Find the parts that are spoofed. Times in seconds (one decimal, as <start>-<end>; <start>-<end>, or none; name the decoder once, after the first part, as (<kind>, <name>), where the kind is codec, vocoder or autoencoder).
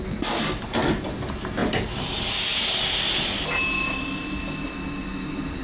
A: none